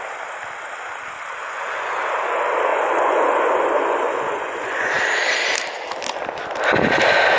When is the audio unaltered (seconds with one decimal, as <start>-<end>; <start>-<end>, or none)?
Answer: 0.0-1.4; 2.0-2.7; 4.9-7.4